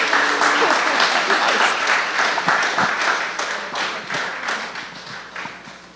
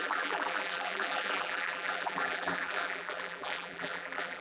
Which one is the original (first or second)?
first